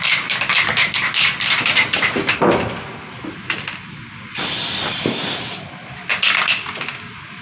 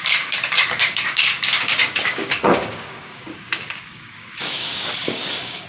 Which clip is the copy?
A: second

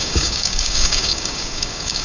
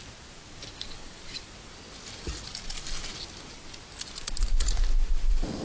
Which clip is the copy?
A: first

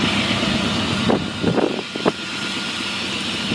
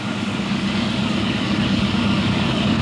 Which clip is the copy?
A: second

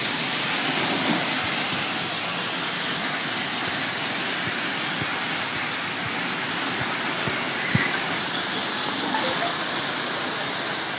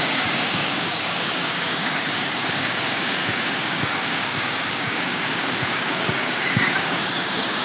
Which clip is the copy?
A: second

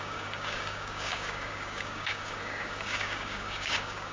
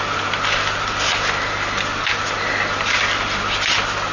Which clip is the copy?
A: first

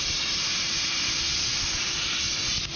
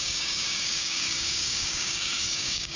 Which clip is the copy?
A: second